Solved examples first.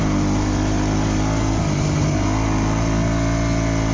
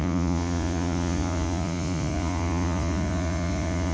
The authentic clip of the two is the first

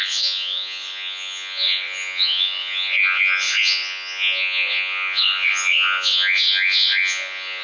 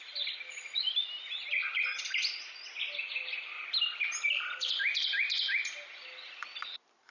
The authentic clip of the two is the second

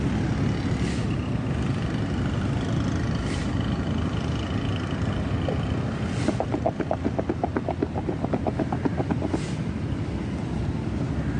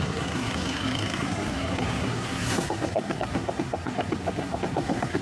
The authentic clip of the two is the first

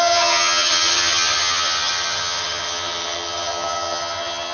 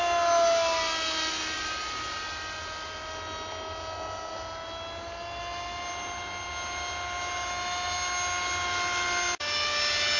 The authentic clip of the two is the second